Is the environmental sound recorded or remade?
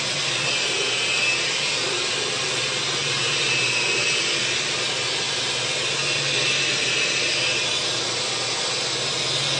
recorded